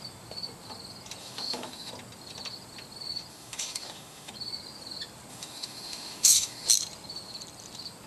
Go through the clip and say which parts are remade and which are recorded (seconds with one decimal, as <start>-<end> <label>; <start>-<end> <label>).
0.0-1.2 recorded; 1.2-1.9 remade; 1.9-3.3 recorded; 3.3-4.3 remade; 4.3-5.3 recorded; 5.3-6.7 remade; 6.7-8.1 recorded